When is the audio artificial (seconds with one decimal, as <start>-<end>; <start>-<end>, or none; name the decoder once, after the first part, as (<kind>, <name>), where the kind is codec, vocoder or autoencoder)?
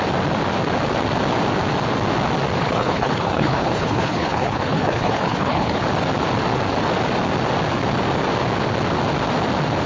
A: 2.6-5.8 (codec, HILCodec)